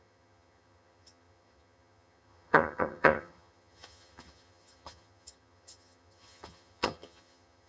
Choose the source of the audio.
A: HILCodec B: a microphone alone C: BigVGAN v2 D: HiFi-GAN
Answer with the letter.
D